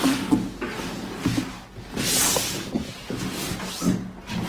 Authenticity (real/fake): real